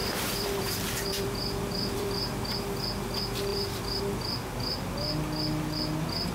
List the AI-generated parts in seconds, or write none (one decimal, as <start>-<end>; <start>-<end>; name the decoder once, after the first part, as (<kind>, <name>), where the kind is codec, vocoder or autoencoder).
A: 0.0-2.5 (vocoder, BigVGAN v2); 3.5-4.0

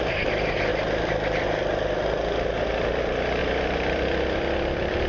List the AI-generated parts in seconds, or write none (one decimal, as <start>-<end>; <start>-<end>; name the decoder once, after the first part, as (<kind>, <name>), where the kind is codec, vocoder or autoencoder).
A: 0.7-2.6 (vocoder, BigVGAN v2); 3.4-5.1

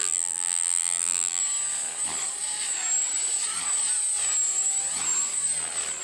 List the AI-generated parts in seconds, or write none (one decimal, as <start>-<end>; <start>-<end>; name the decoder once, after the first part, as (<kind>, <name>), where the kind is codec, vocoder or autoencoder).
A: 0.0-1.4 (vocoder, BigVGAN v2)

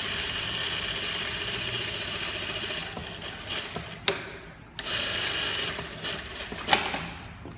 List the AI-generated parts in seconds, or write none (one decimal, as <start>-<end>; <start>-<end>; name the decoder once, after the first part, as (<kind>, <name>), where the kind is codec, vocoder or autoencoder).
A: none

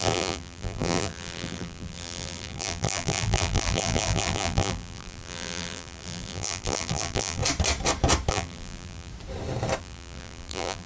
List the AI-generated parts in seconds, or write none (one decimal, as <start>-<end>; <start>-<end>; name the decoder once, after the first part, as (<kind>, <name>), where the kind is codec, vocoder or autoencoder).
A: 0.0-7.4 (vocoder, BigVGAN v2); 8.3-9.1; 9.8-10.9

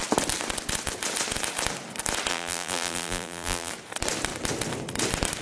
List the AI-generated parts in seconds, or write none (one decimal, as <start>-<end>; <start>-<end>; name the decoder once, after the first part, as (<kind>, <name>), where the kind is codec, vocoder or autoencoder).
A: 2.3-3.7 (vocoder, BigVGAN v2)

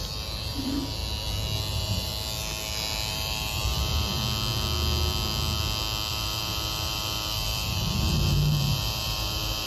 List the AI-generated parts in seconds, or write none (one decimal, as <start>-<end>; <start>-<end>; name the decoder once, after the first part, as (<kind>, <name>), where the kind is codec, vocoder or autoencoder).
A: 0.0-1.0 (vocoder, BigVGAN v2); 1.7-2.1; 3.1-4.2; 6.1-9.7

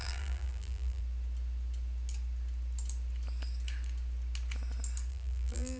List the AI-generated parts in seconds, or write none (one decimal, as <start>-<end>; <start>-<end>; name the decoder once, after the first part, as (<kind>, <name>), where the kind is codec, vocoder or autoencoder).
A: 0.0-1.0 (vocoder, BigVGAN v2); 5.1-5.8